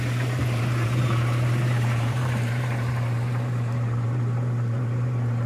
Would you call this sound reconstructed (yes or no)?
yes